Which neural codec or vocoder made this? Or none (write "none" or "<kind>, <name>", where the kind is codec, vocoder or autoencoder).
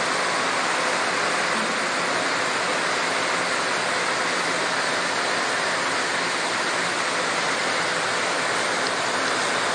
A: none